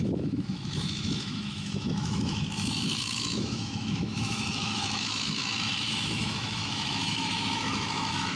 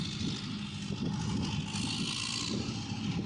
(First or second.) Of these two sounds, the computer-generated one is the first